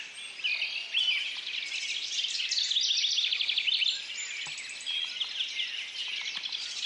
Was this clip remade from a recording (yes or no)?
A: no